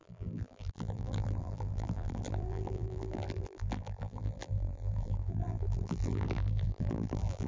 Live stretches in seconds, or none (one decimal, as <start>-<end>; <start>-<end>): none